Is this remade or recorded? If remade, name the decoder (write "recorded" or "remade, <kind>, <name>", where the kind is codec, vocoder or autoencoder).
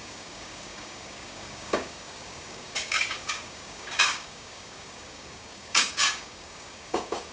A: remade, codec, DAC